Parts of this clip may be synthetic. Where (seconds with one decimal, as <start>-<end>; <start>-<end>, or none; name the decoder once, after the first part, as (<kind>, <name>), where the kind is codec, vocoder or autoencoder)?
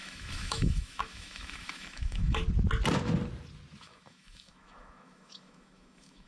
0.0-2.4 (autoencoder, DAC-VAE); 3.8-6.3